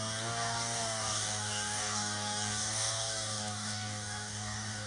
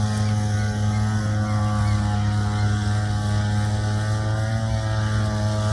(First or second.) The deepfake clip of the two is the first